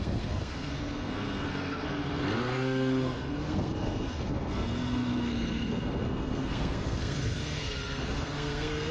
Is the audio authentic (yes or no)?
no